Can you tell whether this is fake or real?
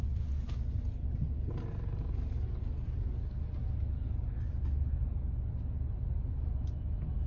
real